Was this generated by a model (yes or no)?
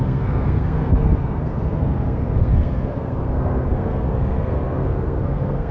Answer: yes